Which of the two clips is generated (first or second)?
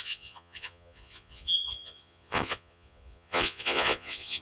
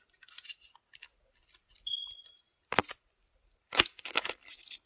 first